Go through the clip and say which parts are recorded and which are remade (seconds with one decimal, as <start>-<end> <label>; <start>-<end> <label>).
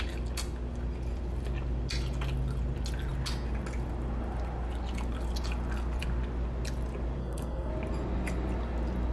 0.0-7.2 recorded; 7.2-7.7 remade; 7.7-9.1 recorded